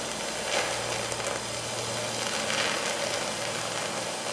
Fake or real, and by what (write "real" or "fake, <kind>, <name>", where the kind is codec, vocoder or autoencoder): real